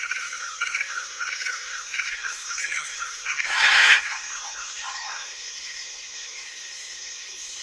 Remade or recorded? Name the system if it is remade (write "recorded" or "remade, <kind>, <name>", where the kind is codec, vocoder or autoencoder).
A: remade, codec, SNAC